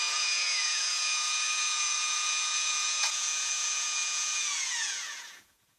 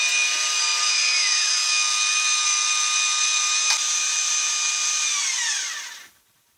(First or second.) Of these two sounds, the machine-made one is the first